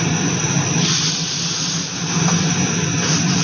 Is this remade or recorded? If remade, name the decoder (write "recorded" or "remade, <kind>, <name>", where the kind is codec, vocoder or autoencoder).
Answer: recorded